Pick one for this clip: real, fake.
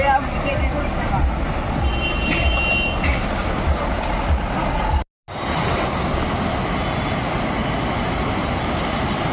real